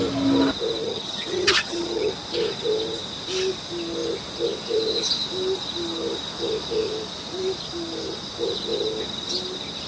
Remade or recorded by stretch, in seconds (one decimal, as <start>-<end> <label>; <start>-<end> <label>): 0.0-0.8 recorded; 0.8-2.1 remade; 2.1-9.9 recorded